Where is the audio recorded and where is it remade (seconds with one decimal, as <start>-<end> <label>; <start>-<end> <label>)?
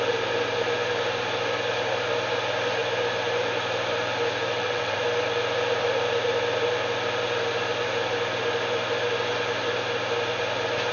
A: 0.0-4.5 recorded; 4.5-5.0 remade; 5.0-10.9 recorded